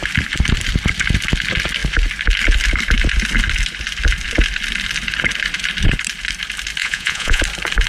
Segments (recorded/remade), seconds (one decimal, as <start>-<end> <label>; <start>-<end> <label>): 0.0-6.8 recorded; 6.8-7.4 remade; 7.4-7.9 recorded